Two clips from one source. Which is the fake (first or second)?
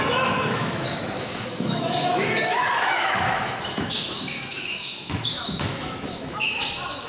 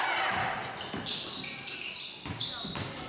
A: first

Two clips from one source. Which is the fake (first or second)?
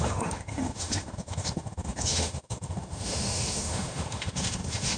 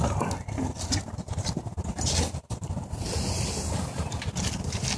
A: first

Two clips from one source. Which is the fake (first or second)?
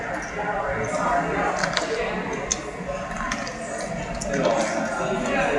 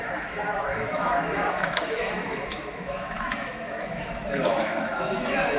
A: second